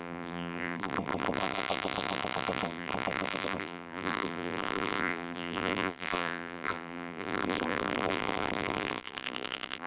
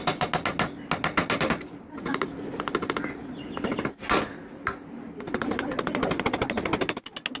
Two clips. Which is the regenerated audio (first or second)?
first